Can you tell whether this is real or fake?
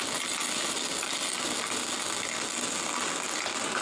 real